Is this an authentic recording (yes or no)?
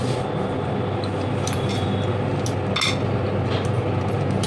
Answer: yes